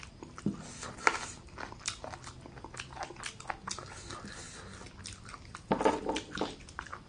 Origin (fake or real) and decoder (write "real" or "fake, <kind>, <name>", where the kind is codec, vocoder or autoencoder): real